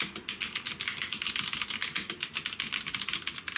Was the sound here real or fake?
real